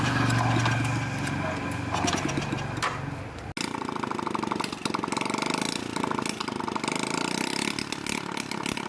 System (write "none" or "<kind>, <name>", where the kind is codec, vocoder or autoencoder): none